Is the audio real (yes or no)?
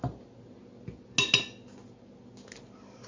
yes